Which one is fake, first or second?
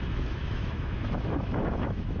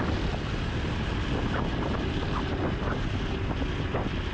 first